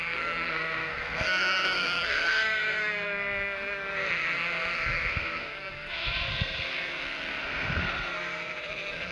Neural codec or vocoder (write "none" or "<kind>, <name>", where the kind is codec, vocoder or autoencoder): codec, SNAC